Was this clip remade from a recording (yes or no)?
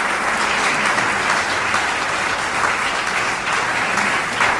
no